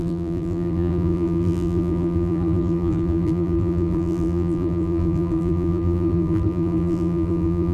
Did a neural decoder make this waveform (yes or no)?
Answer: yes